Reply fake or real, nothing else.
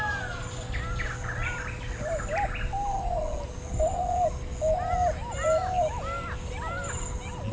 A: real